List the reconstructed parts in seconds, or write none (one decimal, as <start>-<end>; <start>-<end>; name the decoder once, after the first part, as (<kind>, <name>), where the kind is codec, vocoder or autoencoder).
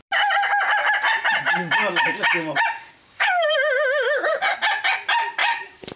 3.0-4.4 (codec, DAC); 5.4-6.0